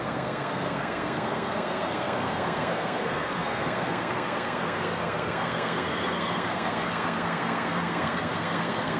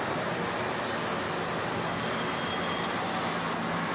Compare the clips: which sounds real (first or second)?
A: second